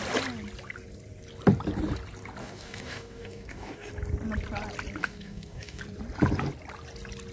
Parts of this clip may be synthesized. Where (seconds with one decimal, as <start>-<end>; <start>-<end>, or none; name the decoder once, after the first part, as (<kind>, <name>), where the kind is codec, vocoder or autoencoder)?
2.4-3.9 (codec, DAC); 5.0-5.8